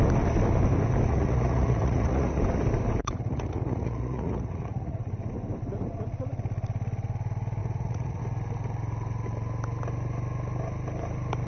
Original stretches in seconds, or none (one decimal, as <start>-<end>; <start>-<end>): 0.0-1.1; 2.4-3.0; 5.0-7.6; 8.2-11.5